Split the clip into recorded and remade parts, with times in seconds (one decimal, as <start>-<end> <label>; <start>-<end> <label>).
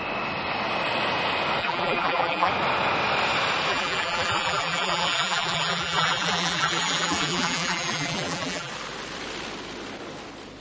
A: 0.0-1.6 recorded; 1.6-2.5 remade; 2.5-3.7 recorded; 3.7-8.7 remade; 8.7-10.6 recorded